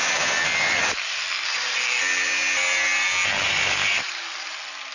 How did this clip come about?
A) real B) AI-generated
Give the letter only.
A